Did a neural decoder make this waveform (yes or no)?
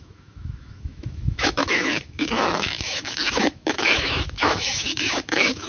yes